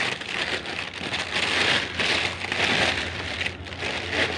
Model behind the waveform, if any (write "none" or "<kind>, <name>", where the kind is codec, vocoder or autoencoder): none